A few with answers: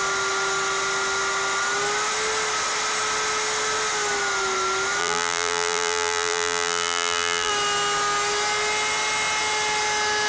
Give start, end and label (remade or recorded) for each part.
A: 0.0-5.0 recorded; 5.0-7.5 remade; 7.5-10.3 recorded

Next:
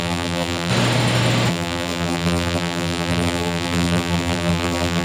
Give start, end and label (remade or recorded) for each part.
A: 0.0-0.7 remade; 0.7-1.5 recorded; 1.5-5.0 remade

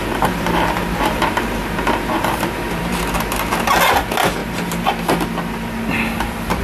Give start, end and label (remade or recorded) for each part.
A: 0.0-3.0 remade; 3.0-4.4 recorded; 4.4-4.9 remade; 4.9-6.6 recorded

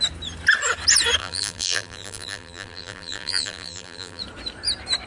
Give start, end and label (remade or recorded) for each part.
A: 0.0-1.2 recorded; 1.2-4.2 remade; 4.2-5.1 recorded

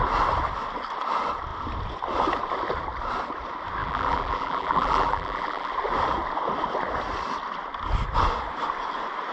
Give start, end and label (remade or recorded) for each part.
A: 0.0-3.8 recorded; 3.8-5.7 remade; 5.7-9.3 recorded

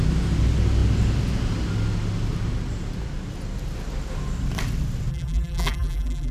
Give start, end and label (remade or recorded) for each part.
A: 0.0-5.1 recorded; 5.1-6.3 remade